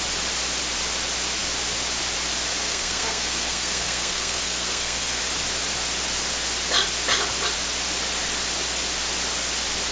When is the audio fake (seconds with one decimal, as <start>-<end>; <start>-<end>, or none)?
2.5-5.2